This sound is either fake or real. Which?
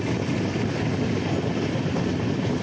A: real